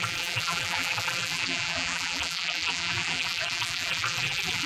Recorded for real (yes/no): no